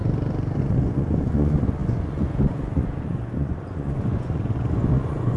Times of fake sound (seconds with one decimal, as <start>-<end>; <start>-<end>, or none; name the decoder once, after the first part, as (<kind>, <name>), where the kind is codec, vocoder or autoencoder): 0.6-5.4 (vocoder, Vocos)

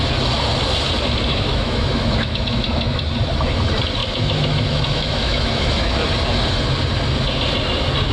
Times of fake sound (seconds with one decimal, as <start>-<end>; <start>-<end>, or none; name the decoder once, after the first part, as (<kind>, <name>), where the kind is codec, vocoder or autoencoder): 1.3-3.0 (autoencoder, DAC-VAE); 4.0-5.9